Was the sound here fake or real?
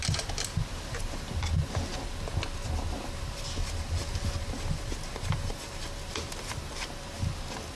real